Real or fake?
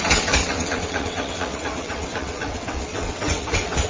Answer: fake